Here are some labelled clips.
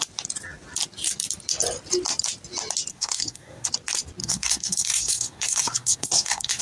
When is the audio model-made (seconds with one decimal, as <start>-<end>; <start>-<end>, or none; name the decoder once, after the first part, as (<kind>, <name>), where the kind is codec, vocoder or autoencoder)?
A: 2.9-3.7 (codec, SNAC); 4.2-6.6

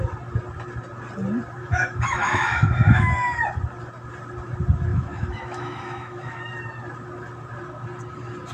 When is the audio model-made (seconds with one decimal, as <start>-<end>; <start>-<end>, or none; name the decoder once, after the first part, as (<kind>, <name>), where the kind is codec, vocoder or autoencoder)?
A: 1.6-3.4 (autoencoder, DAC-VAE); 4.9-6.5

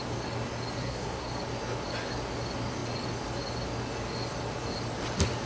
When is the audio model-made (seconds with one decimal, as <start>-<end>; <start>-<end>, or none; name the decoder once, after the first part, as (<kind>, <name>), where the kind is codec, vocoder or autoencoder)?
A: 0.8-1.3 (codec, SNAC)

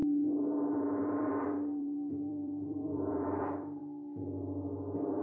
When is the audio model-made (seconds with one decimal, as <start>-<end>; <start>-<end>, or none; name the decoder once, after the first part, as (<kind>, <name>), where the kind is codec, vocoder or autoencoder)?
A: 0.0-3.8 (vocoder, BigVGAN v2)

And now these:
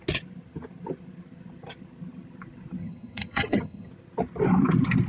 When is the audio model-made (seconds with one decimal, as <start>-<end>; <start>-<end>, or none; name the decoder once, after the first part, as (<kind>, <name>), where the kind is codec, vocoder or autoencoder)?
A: 2.8-3.9 (vocoder, HiFi-GAN)